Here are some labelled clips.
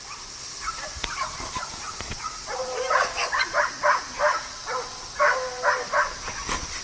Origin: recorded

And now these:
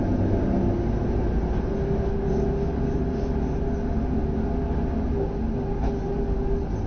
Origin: recorded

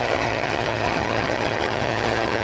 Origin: remade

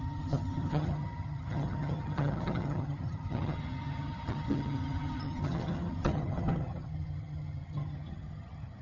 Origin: remade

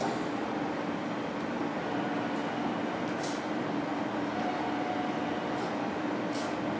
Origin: recorded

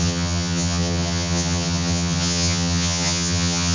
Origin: remade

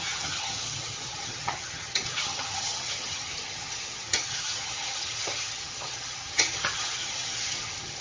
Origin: remade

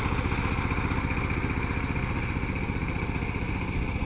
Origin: recorded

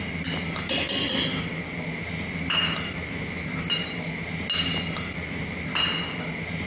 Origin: recorded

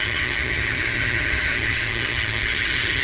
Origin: remade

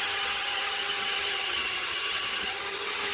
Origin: remade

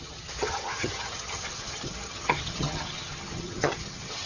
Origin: remade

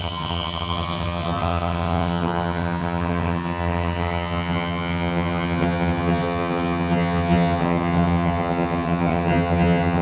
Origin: remade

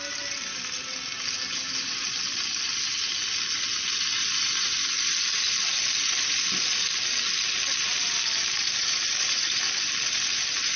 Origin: recorded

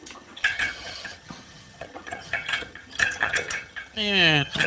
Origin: remade